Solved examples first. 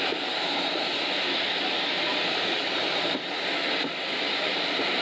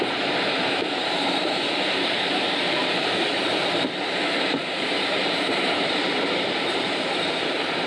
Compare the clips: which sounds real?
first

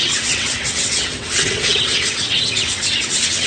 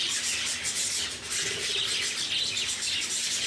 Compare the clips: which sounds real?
second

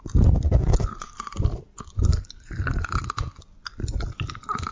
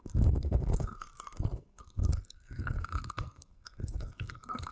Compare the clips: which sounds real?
first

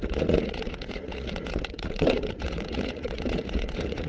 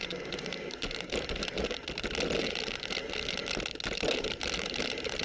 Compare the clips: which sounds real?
second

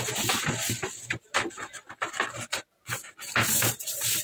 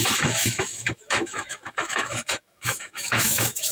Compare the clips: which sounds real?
first